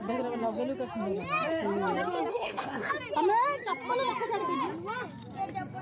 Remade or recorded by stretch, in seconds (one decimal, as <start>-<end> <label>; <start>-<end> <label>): 0.0-2.3 recorded; 2.3-2.9 remade; 2.9-5.8 recorded